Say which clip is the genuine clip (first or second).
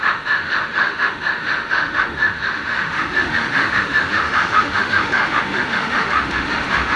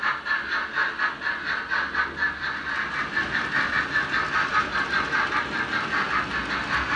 second